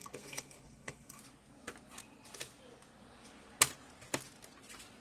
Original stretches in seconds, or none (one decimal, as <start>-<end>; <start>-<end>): 1.2-5.0